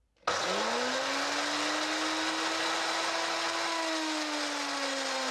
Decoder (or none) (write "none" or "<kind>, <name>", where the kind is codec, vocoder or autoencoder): none